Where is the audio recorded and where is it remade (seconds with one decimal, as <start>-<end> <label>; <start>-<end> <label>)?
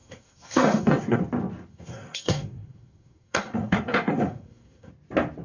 0.0-1.2 remade; 1.2-1.7 recorded; 1.7-4.9 remade; 4.9-5.4 recorded